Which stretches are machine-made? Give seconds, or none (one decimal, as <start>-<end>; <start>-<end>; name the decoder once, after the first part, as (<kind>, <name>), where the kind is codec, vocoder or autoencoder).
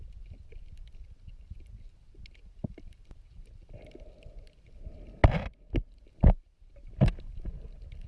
none